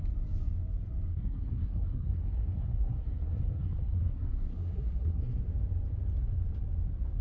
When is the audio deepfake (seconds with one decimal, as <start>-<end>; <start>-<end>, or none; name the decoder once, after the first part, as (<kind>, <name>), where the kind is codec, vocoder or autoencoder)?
1.1-5.4 (codec, SNAC)